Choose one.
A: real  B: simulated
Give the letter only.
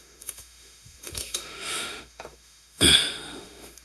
B